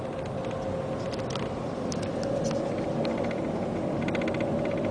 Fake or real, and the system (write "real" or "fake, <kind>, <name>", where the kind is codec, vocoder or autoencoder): real